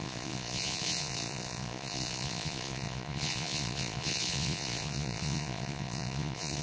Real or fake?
fake